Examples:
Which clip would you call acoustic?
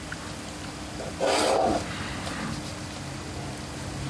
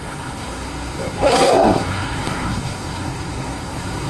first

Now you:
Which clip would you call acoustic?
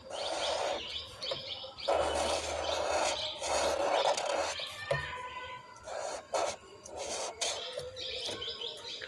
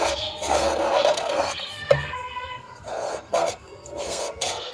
first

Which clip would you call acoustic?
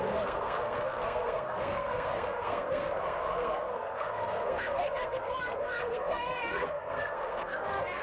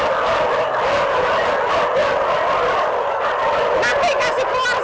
second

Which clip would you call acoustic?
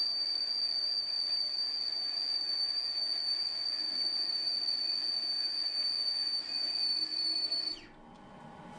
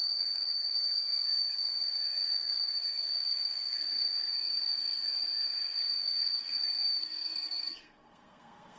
first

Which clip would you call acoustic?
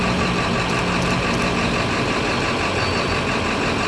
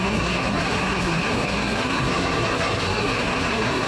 first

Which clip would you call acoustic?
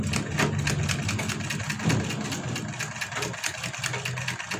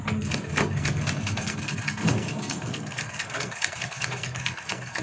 first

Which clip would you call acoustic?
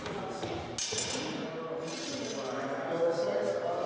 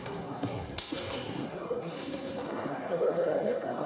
first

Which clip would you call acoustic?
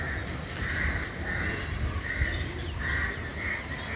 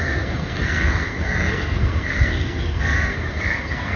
first